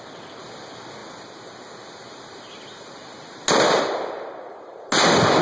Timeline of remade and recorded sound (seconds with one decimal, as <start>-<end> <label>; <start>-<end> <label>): 0.0-5.4 recorded